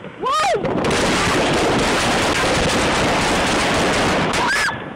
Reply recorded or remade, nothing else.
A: recorded